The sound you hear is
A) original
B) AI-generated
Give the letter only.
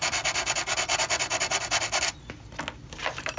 A